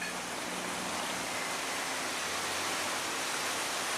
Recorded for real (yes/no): yes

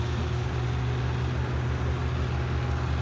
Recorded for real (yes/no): yes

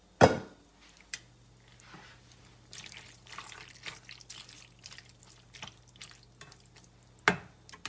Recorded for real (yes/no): yes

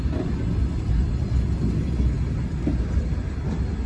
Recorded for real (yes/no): yes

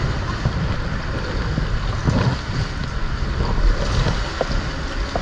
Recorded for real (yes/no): yes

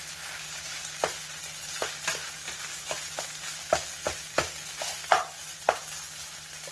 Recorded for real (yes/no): yes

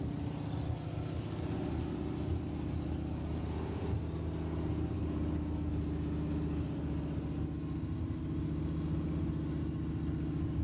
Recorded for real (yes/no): yes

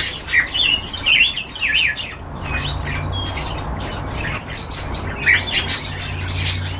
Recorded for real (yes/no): yes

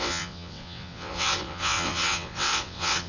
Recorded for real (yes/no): no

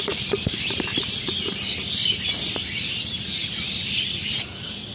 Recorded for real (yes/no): yes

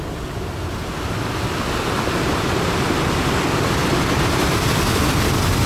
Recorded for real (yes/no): yes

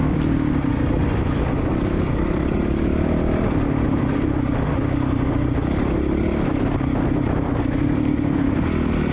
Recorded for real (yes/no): yes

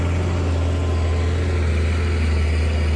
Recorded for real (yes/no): yes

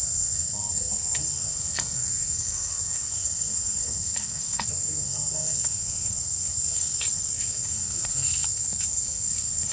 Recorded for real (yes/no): no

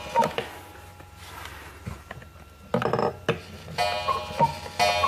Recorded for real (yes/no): yes